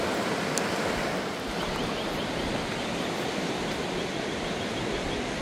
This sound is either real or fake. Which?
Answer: fake